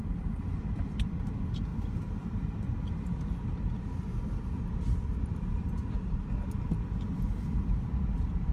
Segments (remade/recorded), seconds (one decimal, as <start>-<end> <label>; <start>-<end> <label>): 0.0-8.5 recorded